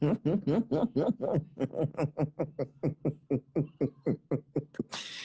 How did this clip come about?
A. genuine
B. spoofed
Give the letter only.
A